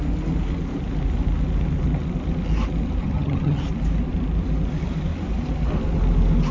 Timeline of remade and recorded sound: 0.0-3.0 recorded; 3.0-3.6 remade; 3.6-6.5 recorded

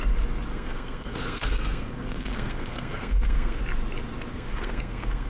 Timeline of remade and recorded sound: 0.0-0.5 recorded; 0.5-3.6 remade; 3.6-4.3 recorded; 4.3-5.3 remade

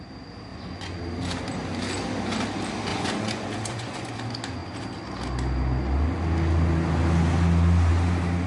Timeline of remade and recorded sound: 0.0-0.5 recorded; 0.5-1.0 remade; 1.0-2.9 recorded; 2.9-4.1 remade; 4.1-8.5 recorded

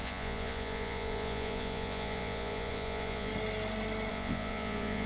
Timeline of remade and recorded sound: 0.0-3.3 remade; 3.3-4.1 recorded; 4.1-5.1 remade